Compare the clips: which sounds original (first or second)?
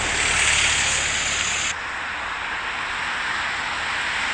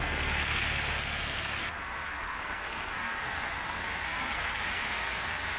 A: first